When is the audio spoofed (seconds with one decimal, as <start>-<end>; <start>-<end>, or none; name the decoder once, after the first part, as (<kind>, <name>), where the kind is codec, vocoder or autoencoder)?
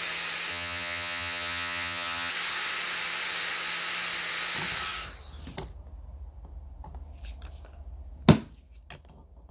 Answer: 0.5-2.3 (vocoder, HiFi-GAN)